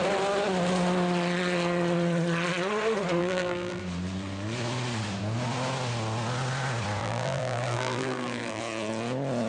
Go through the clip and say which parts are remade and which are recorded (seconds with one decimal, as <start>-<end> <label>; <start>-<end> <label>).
0.0-3.2 recorded; 3.2-3.8 remade; 3.8-7.0 recorded; 7.0-8.6 remade; 8.6-9.5 recorded